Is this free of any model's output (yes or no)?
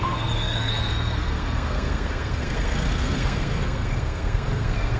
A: no